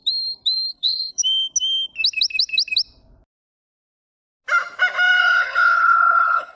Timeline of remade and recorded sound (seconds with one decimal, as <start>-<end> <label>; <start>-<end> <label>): 0.0-0.7 recorded; 0.7-1.2 remade; 1.2-5.2 recorded; 5.2-6.6 remade